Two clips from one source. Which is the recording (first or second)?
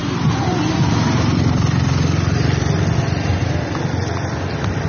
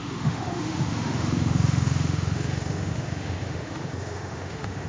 first